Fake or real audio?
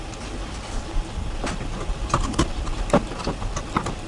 real